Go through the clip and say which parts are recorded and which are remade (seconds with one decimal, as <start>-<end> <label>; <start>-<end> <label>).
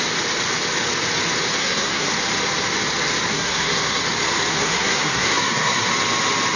0.0-1.6 recorded; 1.6-2.1 remade; 2.1-3.3 recorded; 3.3-4.0 remade; 4.0-4.5 recorded; 4.5-5.9 remade; 5.9-6.6 recorded